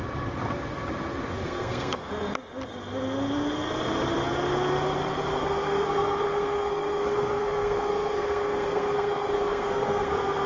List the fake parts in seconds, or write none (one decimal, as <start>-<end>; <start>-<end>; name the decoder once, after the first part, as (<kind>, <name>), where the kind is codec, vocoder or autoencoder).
1.4-2.1 (codec, SNAC); 5.3-10.5